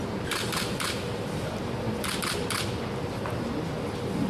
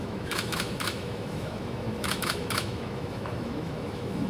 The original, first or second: first